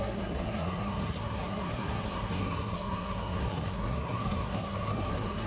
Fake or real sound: fake